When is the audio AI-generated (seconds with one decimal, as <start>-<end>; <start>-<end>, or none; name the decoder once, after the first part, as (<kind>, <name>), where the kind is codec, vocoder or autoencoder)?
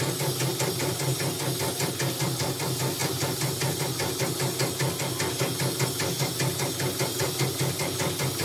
none